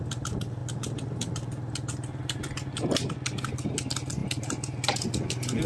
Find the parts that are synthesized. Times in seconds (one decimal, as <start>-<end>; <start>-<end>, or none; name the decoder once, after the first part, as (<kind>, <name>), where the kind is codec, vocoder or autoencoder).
none